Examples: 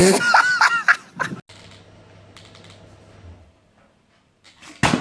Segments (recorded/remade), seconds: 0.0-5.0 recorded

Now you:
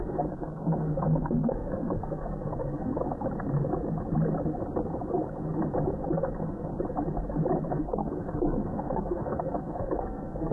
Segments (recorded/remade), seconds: 0.0-3.0 remade; 3.0-6.1 recorded; 6.1-6.7 remade; 6.7-7.7 recorded; 7.7-10.5 remade

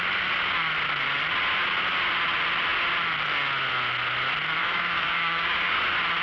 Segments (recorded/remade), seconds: 0.0-4.6 recorded; 4.6-5.8 remade; 5.8-6.2 recorded